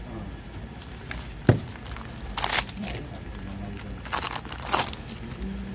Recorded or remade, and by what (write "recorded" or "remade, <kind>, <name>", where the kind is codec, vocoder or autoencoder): recorded